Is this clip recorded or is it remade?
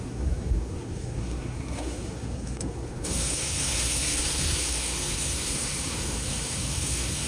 remade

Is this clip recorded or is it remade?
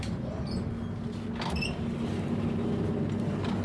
recorded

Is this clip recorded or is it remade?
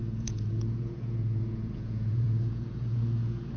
remade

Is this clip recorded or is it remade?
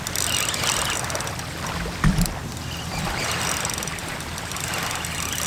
recorded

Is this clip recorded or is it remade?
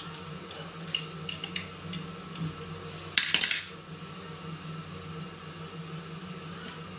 recorded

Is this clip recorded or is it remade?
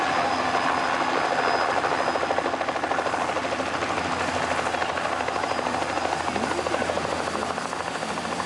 recorded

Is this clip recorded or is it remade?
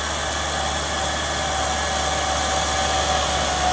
recorded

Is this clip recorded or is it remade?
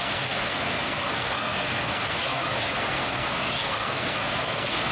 remade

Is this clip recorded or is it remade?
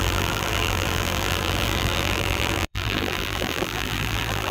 remade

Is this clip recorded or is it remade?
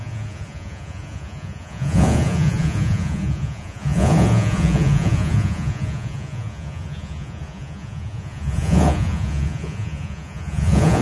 remade